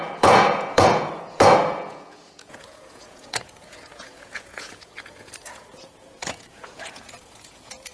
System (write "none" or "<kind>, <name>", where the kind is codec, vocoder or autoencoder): vocoder, Vocos